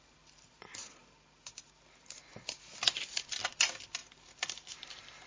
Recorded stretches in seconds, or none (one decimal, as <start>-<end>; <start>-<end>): 0.0-5.3